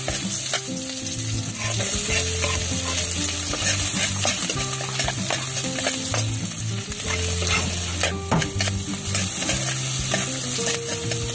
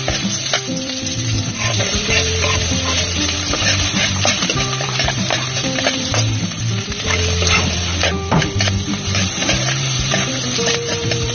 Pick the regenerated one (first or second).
second